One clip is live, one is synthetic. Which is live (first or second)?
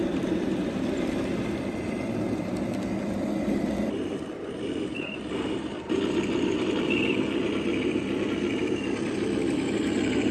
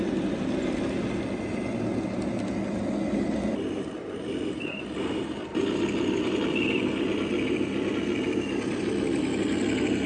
second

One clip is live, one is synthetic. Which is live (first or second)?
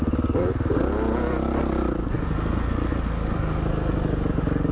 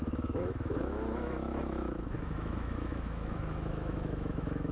first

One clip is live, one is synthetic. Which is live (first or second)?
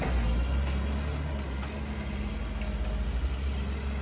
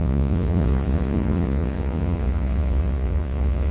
first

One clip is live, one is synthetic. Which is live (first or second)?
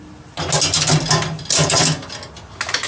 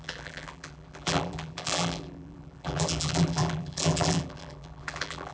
first